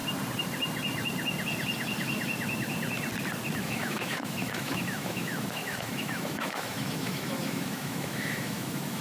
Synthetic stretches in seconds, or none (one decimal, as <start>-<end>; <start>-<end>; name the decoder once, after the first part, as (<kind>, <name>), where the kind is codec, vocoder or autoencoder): 3.6-9.0 (autoencoder, DAC-VAE)